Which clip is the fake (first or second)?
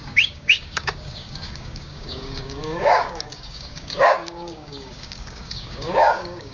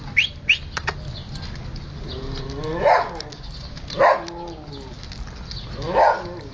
first